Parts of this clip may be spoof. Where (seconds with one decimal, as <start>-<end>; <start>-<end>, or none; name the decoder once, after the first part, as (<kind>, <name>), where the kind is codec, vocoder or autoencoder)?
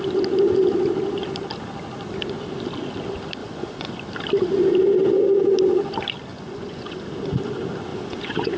3.4-3.9 (vocoder, Vocos); 6.3-7.0; 7.9-8.6